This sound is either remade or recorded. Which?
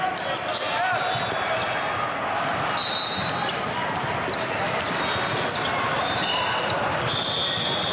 recorded